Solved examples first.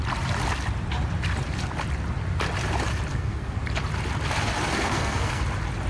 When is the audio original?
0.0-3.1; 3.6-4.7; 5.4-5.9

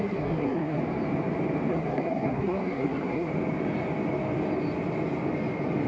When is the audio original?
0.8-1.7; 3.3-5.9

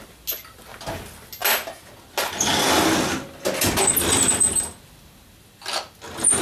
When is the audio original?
0.0-6.4

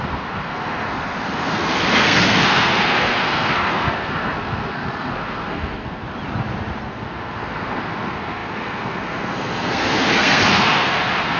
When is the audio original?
6.0-6.8

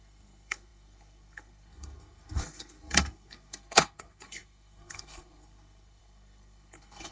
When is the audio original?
none

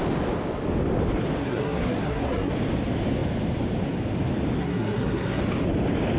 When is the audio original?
0.0-1.4; 2.5-4.6; 5.4-6.2

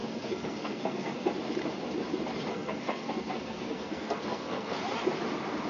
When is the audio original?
1.3-2.5; 4.8-5.7